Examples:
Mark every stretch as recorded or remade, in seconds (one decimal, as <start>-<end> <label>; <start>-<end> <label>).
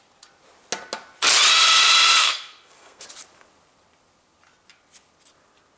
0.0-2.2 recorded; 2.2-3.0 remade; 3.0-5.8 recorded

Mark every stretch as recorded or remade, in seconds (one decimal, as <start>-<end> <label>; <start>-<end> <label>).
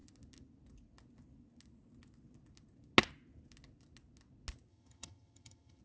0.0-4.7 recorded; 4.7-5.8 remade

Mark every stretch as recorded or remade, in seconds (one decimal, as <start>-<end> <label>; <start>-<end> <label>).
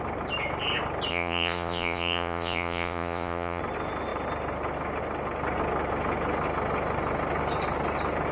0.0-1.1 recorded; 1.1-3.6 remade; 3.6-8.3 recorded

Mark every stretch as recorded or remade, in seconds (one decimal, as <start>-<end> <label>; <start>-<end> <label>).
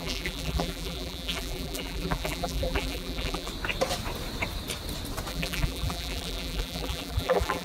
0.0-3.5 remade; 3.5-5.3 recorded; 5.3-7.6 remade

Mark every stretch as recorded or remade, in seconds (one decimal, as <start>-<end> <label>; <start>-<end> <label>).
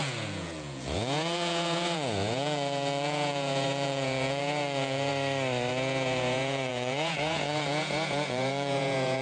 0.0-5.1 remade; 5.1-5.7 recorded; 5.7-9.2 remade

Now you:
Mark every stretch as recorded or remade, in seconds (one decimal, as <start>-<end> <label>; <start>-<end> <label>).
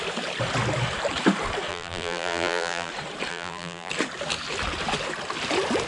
0.0-1.7 recorded; 1.7-2.9 remade; 2.9-3.3 recorded; 3.3-3.9 remade; 3.9-5.9 recorded